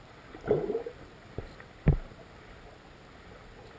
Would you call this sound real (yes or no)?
yes